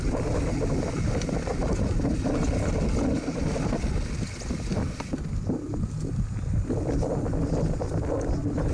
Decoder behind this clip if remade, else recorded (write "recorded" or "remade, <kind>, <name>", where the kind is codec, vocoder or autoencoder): recorded